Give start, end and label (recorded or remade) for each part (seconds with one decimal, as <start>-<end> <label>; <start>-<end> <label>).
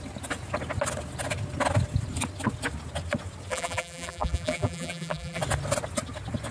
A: 0.0-3.5 recorded; 3.5-5.4 remade; 5.4-6.5 recorded